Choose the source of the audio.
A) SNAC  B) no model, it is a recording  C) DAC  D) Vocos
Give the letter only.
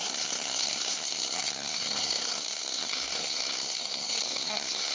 A